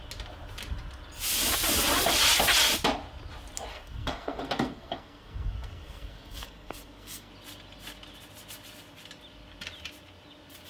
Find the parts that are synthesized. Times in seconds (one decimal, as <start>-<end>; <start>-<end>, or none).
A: 3.7-7.3